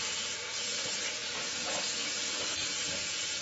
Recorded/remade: remade